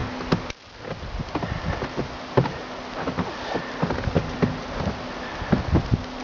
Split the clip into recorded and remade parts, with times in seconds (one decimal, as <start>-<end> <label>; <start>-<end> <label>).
0.0-6.2 recorded